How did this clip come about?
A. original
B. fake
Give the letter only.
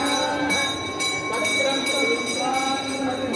A